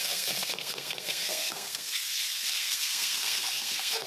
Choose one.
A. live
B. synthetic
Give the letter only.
B